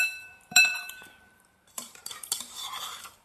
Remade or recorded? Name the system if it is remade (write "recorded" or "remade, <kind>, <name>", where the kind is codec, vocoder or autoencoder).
remade, vocoder, BigVGAN v2